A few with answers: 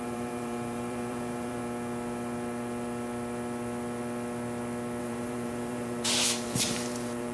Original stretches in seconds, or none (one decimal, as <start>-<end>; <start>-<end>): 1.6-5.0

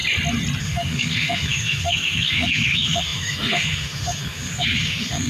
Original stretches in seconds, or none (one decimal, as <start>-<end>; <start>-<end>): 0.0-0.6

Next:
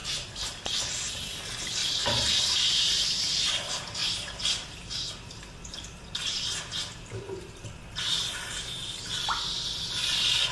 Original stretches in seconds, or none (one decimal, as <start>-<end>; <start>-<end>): 1.4-1.8; 3.2-4.0; 7.7-10.5